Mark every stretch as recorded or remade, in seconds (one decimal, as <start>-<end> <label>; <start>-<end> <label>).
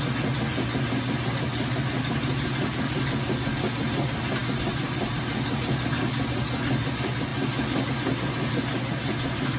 0.0-9.6 recorded